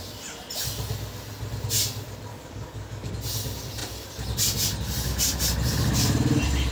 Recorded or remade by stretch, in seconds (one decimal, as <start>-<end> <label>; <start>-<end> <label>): 0.0-2.3 recorded; 2.3-3.1 remade; 3.1-6.7 recorded